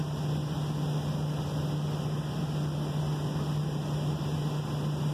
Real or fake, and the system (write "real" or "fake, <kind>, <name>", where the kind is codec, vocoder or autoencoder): real